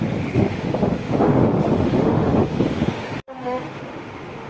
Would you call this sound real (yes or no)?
no